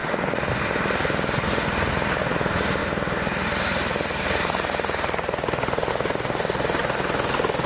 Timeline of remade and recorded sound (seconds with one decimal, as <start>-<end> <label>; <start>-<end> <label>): 0.0-7.7 recorded